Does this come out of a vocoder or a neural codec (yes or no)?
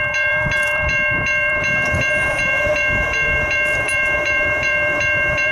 yes